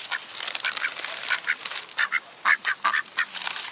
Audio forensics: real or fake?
real